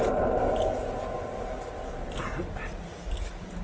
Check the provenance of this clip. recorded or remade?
recorded